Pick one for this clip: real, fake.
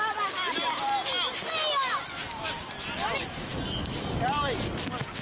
real